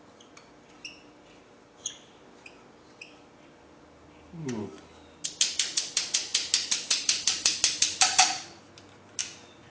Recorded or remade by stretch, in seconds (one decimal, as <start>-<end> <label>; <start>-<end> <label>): 0.0-9.7 recorded